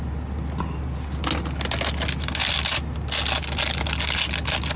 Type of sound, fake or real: real